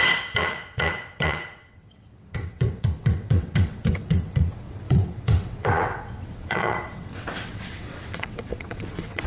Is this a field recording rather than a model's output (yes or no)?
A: no